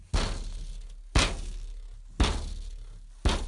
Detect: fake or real real